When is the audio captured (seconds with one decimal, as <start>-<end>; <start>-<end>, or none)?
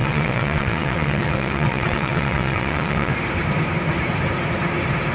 3.1-5.1